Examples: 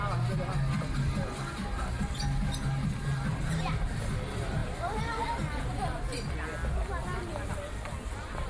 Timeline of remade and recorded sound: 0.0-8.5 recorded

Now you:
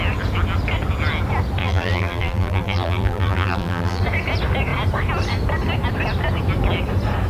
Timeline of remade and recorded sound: 0.0-1.6 recorded; 1.6-4.0 remade; 4.0-7.3 recorded

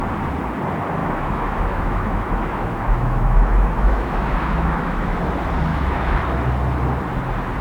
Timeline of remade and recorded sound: 0.0-1.0 recorded; 1.0-5.2 remade; 5.2-5.7 recorded; 5.7-6.2 remade; 6.2-7.6 recorded

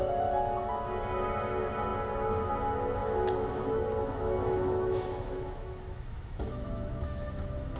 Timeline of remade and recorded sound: 0.0-3.0 recorded; 3.0-7.8 remade

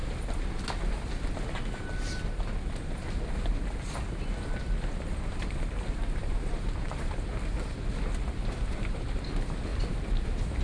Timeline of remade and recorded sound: 0.0-6.2 recorded; 6.2-7.3 remade; 7.3-10.6 recorded

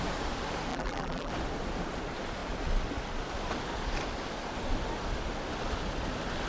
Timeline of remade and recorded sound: 0.0-0.7 recorded; 0.7-1.3 remade; 1.3-6.5 recorded